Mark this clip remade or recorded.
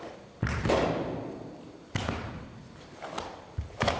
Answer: recorded